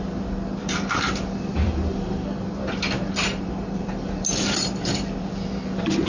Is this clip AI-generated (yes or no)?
yes